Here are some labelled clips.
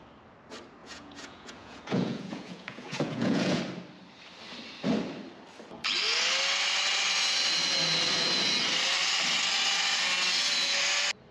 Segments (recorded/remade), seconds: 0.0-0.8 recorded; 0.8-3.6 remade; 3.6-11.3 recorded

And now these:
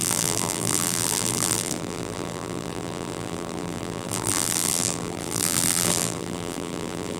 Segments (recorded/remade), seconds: 0.0-7.2 remade

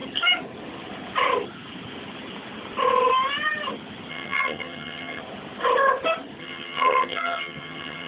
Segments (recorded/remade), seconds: 0.0-4.1 recorded; 4.1-5.2 remade; 5.2-6.4 recorded; 6.4-8.1 remade

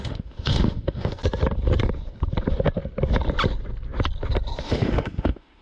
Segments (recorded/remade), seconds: 0.0-1.2 remade; 1.2-4.6 recorded; 4.6-5.6 remade

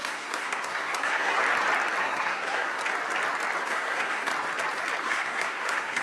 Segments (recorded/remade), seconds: 0.0-1.4 remade; 1.4-2.0 recorded; 2.0-2.8 remade; 2.8-3.6 recorded; 3.6-4.3 remade; 4.3-5.0 recorded; 5.0-6.0 remade

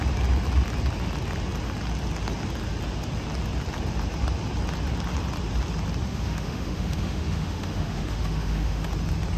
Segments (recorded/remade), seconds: 0.0-6.1 recorded; 6.1-8.9 remade; 8.9-9.4 recorded

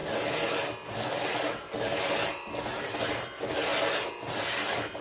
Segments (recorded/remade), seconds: 0.0-5.0 recorded

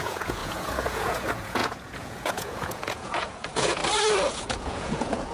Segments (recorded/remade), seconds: 0.0-3.8 remade; 3.8-4.3 recorded; 4.3-5.3 remade